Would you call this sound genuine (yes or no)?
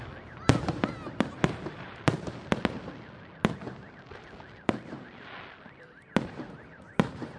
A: yes